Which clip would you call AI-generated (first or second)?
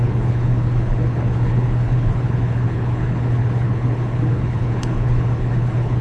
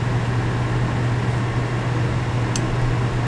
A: first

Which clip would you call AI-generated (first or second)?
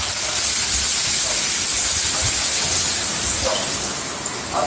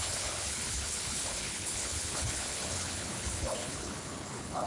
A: second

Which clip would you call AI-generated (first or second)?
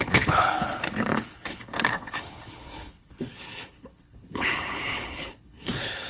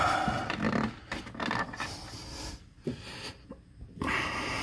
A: first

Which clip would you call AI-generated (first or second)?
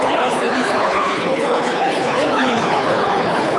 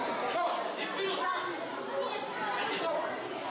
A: first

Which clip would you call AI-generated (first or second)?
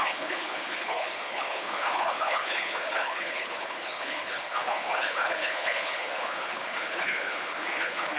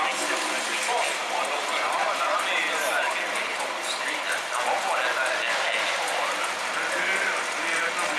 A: first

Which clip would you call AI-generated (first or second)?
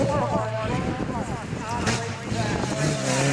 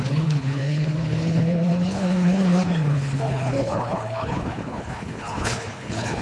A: second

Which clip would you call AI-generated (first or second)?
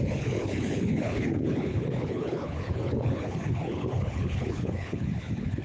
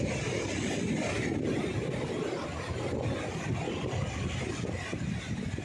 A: first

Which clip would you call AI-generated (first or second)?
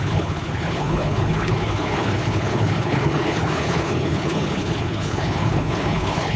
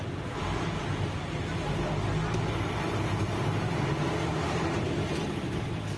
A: first